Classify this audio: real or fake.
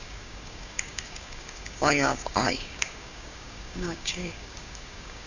fake